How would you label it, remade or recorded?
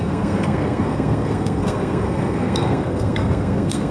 remade